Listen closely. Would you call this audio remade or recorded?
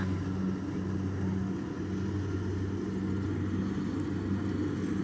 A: recorded